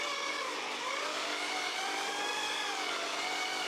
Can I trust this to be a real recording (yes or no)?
no